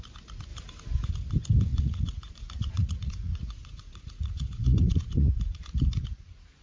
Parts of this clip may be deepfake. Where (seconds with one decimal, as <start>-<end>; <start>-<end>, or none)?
1.7-5.6